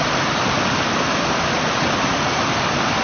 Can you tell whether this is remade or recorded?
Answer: recorded